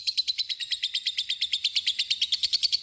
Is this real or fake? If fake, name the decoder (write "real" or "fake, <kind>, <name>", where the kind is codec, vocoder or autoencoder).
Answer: real